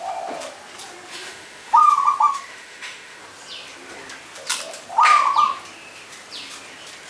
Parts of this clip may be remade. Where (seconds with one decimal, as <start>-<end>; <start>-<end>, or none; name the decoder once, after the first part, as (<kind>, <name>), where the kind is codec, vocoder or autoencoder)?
1.1-1.8 (autoencoder, DAC-VAE); 2.3-3.2